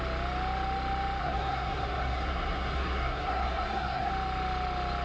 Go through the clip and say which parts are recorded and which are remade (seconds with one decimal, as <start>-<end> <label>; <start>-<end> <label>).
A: 0.0-1.2 recorded; 1.2-4.1 remade; 4.1-5.0 recorded